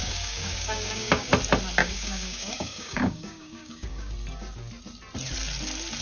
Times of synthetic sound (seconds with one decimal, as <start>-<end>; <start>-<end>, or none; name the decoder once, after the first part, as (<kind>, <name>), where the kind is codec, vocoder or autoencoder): 0.0-1.3 (codec, DAC); 1.8-4.1